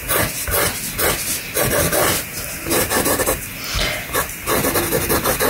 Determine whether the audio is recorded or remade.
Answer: recorded